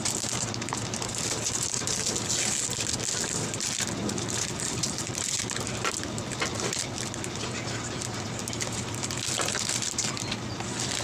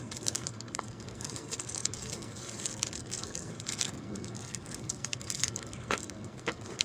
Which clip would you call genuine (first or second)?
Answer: first